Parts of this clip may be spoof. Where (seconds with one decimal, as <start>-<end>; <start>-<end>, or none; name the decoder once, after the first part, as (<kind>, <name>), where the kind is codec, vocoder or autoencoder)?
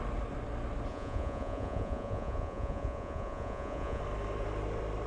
0.9-4.0 (vocoder, Vocos)